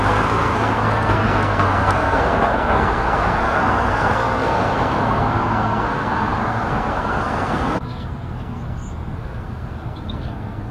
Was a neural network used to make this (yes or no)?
yes